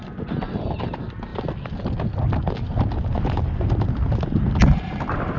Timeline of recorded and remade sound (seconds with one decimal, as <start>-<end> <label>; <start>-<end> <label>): 0.0-5.4 recorded